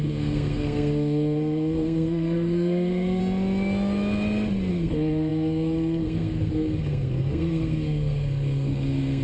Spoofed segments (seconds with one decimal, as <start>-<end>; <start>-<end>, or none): 0.0-3.2; 4.7-9.2